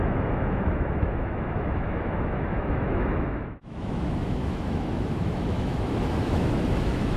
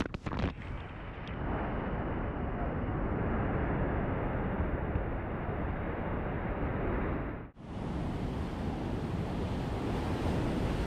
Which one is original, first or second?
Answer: second